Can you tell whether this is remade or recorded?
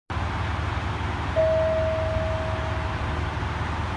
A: recorded